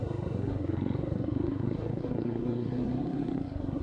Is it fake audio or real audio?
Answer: fake